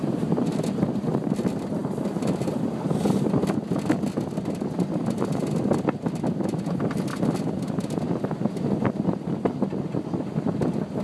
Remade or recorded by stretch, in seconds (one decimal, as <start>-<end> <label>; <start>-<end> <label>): 0.0-11.0 recorded